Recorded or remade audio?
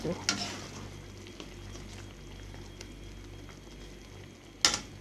recorded